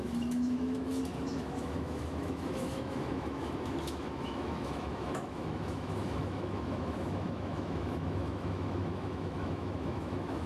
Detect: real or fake fake